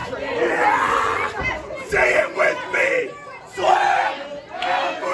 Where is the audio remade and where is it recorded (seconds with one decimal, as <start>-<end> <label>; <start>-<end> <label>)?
0.0-5.1 recorded